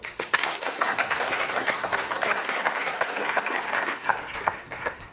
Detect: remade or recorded remade